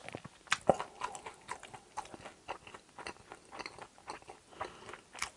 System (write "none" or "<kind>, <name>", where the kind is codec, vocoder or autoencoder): none